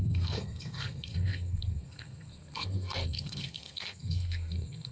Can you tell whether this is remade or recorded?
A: remade